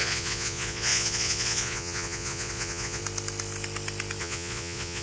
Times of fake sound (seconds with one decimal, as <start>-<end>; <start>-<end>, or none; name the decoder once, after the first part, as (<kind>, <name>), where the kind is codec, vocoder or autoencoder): 0.0-3.0 (vocoder, Vocos); 4.2-5.0